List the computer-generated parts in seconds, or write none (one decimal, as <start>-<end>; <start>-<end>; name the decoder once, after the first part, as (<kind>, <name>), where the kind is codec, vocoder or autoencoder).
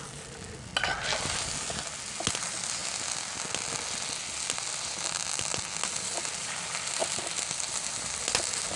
none